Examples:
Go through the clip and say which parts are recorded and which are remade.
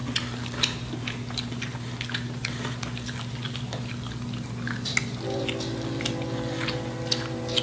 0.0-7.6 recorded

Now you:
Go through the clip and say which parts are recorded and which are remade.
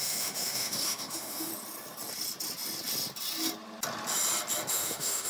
0.0-1.5 remade; 1.5-4.7 recorded; 4.7-5.3 remade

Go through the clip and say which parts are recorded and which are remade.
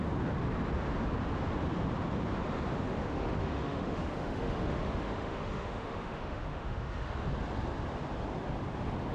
0.0-3.0 recorded; 3.0-7.1 remade; 7.1-9.1 recorded